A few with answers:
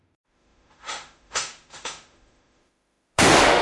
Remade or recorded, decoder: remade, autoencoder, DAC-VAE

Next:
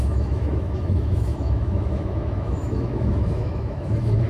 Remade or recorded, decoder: remade, autoencoder, DAC-VAE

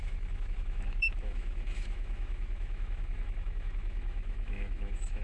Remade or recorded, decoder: remade, autoencoder, DAC-VAE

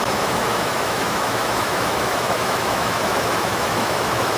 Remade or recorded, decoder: remade, autoencoder, DAC-VAE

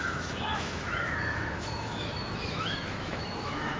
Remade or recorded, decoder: remade, autoencoder, DAC-VAE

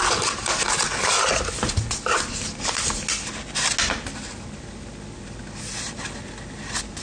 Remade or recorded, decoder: recorded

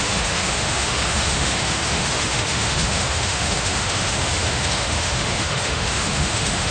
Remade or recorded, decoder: remade, autoencoder, DAC-VAE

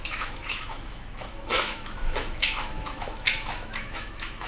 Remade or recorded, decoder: remade, autoencoder, DAC-VAE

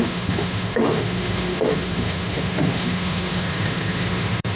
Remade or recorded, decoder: remade, autoencoder, DAC-VAE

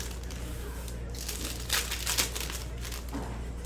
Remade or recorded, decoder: recorded